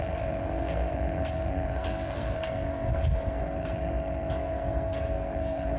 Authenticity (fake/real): fake